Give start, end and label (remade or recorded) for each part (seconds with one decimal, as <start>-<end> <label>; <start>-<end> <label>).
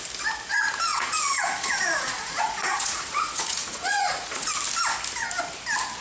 0.0-0.9 recorded; 0.9-4.5 remade; 4.5-6.0 recorded